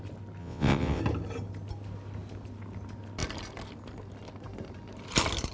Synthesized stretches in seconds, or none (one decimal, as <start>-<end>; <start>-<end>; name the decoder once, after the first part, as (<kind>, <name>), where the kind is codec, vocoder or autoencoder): 0.4-1.0 (vocoder, WaveNeXt)

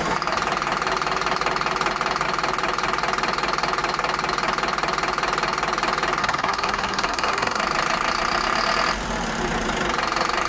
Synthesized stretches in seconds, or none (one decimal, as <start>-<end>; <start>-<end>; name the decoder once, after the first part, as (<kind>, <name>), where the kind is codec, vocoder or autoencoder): 6.2-7.6 (codec, SNAC)

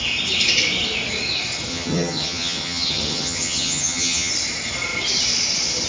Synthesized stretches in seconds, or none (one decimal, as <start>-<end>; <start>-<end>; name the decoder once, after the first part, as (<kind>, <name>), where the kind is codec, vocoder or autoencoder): 1.7-4.3 (vocoder, HiFi-GAN)

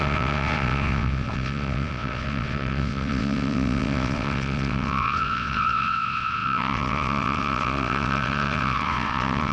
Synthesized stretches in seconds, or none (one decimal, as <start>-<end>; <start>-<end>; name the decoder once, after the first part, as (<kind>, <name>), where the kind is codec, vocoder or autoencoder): 0.0-9.5 (vocoder, WaveNeXt)